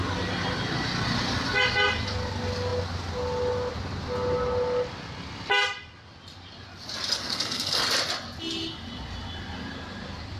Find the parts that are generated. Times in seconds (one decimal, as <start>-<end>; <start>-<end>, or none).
7.2-7.9